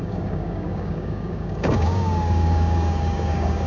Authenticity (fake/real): fake